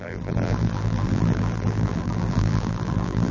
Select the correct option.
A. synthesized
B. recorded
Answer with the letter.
A